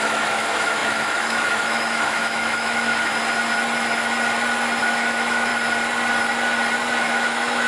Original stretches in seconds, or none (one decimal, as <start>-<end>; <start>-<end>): 3.1-4.8; 5.5-7.0